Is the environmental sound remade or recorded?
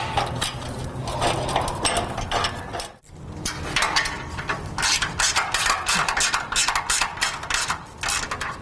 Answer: recorded